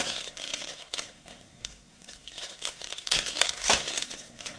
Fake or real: fake